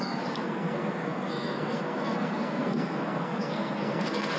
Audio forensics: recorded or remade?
remade